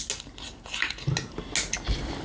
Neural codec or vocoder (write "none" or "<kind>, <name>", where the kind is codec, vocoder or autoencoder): none